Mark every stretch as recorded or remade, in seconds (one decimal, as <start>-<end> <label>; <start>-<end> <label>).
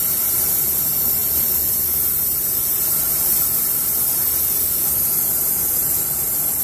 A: 0.0-6.6 recorded